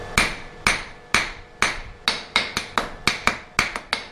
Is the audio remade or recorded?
recorded